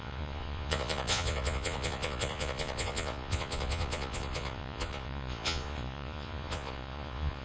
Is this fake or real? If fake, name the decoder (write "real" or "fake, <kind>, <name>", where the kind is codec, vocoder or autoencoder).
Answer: fake, vocoder, Vocos